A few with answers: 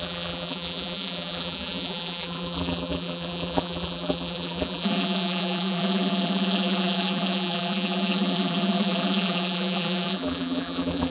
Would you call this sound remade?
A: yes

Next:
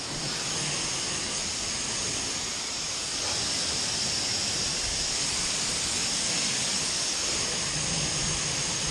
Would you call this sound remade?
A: no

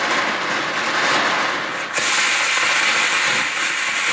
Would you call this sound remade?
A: no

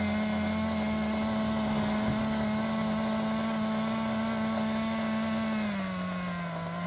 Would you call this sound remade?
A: no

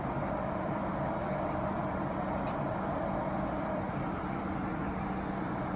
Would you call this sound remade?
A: yes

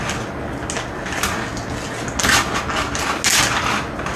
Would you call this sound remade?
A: no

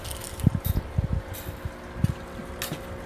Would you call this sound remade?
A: no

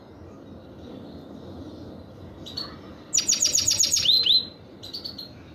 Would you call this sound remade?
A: no